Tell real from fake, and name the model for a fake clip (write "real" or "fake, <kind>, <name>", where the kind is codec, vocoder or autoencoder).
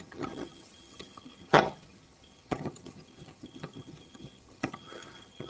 fake, vocoder, HiFi-GAN